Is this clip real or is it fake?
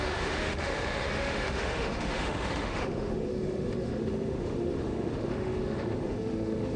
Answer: fake